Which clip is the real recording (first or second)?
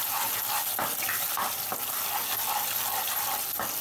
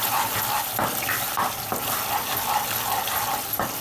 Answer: first